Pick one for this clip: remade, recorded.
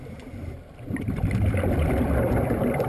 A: remade